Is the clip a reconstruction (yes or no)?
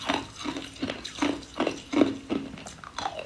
no